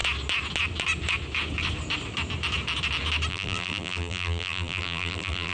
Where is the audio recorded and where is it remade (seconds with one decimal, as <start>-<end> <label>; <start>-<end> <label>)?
0.0-3.3 recorded; 3.3-5.5 remade

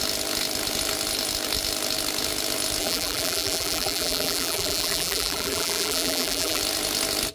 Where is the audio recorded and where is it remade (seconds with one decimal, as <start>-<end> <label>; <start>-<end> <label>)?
0.0-2.8 recorded; 2.8-6.6 remade; 6.6-7.3 recorded

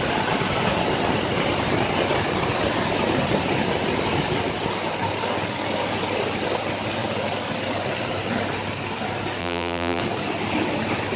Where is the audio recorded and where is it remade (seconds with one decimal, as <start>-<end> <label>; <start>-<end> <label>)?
0.0-9.4 recorded; 9.4-10.0 remade; 10.0-11.2 recorded